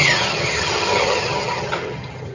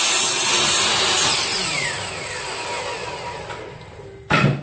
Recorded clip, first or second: second